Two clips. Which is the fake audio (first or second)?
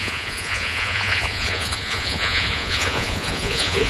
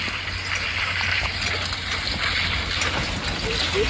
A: first